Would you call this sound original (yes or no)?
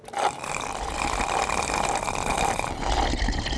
yes